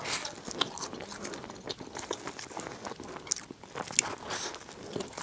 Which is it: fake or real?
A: real